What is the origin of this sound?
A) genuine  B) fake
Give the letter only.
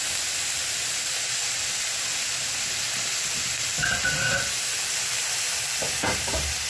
A